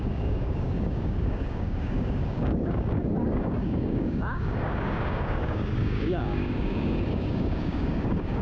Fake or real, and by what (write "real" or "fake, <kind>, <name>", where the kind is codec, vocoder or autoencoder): fake, codec, DAC